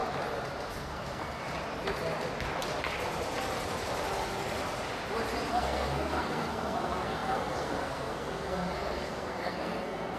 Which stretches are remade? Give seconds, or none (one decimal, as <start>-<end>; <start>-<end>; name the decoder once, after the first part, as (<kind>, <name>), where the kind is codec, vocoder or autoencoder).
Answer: 0.7-1.4 (codec, SNAC); 5.5-10.2